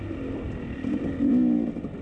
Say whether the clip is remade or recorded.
recorded